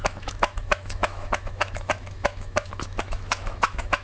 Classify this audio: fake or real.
fake